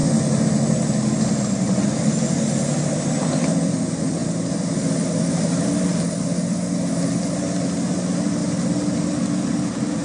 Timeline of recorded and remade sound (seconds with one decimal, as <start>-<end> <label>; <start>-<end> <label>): 0.0-10.0 recorded